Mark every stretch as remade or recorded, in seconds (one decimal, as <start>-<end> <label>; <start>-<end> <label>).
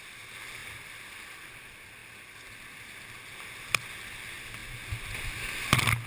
0.0-0.6 recorded; 0.6-1.1 remade; 1.1-6.1 recorded